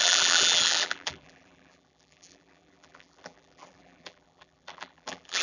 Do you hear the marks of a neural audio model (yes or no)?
yes